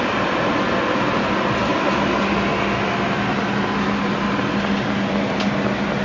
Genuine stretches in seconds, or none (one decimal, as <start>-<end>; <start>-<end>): 0.0-6.0